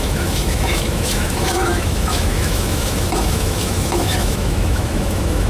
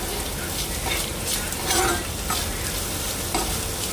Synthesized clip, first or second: first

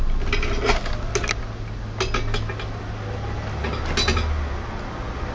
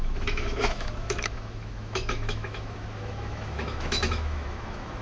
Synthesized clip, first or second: second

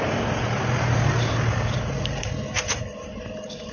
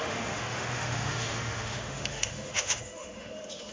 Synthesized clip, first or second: second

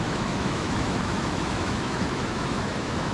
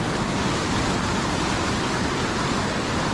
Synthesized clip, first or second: first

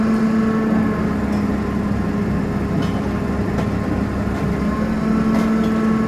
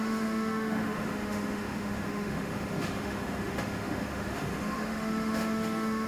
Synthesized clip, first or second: second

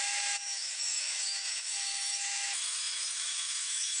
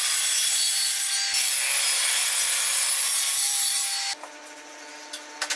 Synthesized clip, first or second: first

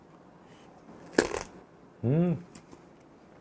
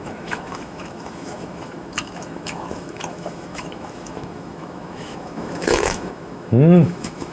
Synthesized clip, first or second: second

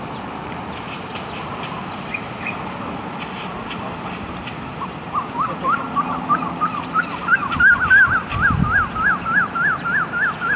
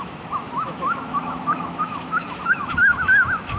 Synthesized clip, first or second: second